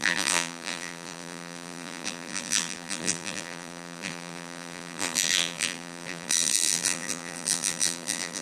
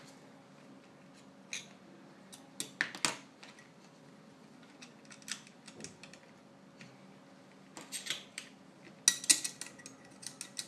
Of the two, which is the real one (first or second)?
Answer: second